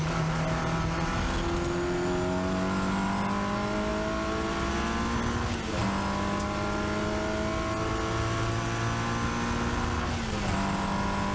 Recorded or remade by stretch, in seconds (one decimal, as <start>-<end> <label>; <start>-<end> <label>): 0.0-11.3 recorded